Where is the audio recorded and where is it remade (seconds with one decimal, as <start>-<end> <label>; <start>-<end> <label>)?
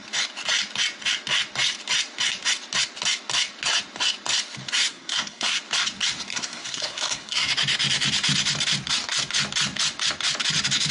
0.0-4.9 recorded; 4.9-5.6 remade; 5.6-6.3 recorded; 6.3-7.5 remade; 7.5-10.9 recorded